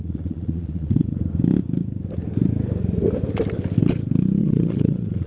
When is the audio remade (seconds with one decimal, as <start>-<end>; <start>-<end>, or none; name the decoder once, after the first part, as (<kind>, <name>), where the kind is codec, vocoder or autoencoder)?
0.0-1.2 (vocoder, Vocos); 4.4-5.3